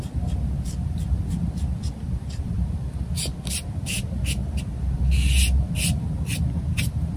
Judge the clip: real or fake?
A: real